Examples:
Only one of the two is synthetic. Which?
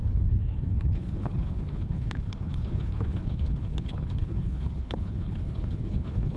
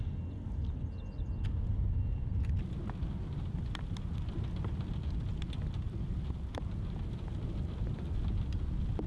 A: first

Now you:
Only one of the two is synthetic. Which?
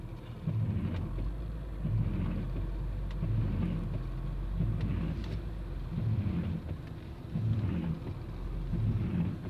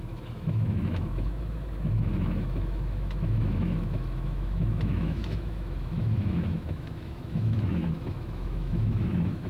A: second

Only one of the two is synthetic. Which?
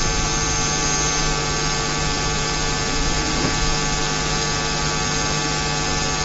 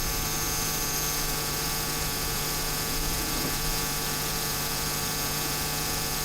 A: second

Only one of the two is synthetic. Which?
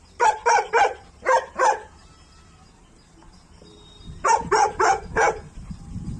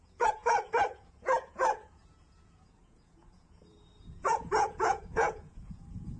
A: second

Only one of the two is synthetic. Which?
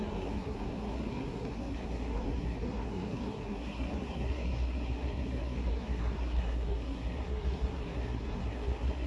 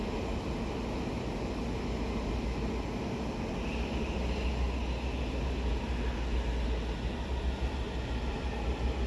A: first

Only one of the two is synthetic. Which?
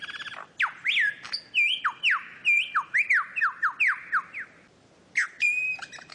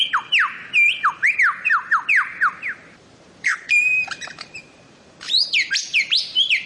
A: second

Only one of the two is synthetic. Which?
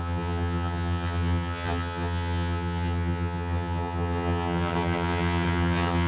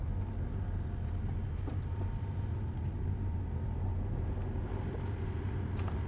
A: first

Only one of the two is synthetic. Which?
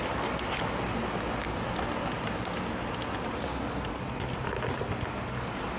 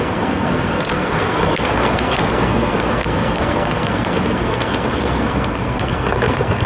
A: second